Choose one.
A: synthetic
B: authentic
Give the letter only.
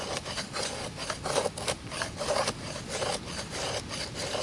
A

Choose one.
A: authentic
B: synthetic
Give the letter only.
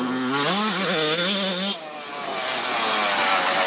A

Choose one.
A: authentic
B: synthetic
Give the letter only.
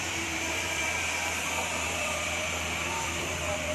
B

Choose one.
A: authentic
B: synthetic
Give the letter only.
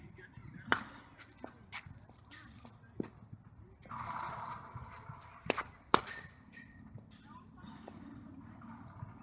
B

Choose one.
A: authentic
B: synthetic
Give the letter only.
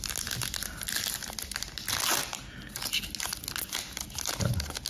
A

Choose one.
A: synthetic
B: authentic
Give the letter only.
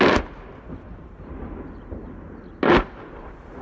B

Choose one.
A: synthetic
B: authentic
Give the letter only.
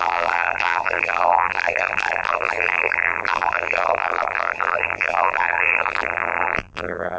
A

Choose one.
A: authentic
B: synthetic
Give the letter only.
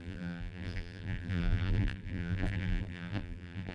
B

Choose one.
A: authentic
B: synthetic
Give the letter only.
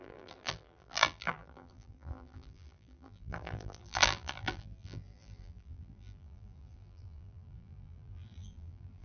B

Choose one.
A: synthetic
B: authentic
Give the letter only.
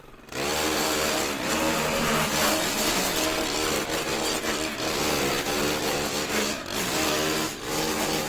B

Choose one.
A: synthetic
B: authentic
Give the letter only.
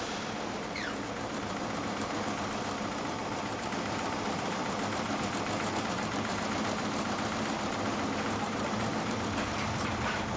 A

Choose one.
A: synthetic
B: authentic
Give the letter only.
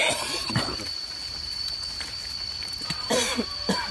A